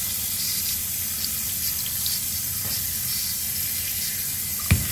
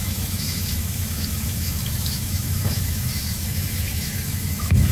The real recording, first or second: first